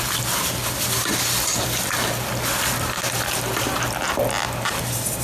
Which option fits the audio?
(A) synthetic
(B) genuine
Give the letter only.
B